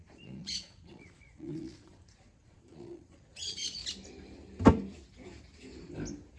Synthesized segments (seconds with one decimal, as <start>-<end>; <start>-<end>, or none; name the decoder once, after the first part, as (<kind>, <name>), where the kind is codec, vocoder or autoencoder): 0.0-3.8 (vocoder, Vocos)